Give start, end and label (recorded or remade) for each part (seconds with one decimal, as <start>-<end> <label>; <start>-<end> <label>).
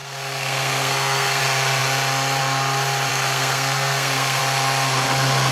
0.0-1.4 remade; 1.4-3.1 recorded; 3.1-4.4 remade; 4.4-5.5 recorded